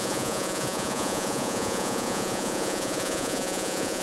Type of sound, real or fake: fake